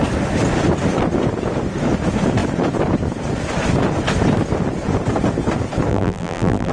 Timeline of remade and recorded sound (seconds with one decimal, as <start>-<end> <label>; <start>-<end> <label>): 0.0-5.9 recorded; 5.9-6.7 remade